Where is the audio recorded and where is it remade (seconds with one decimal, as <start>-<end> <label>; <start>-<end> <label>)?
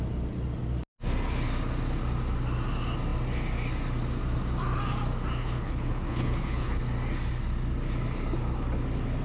0.0-5.4 recorded; 5.4-6.8 remade; 6.8-9.2 recorded